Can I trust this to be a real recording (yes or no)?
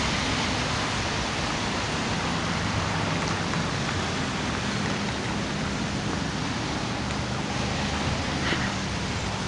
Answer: yes